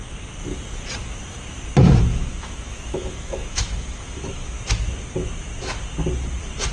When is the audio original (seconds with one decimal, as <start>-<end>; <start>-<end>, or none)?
0.0-2.1; 4.6-6.7